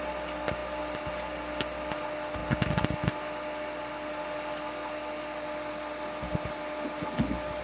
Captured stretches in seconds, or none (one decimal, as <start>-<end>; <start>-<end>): 0.0-7.6